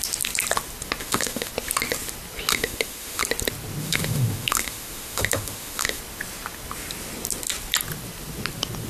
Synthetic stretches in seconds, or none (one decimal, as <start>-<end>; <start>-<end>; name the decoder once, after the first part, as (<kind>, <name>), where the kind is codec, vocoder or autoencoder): 1.0-1.5 (autoencoder, DAC-VAE); 2.5-3.2; 3.8-6.0